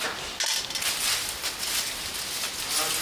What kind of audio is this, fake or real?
real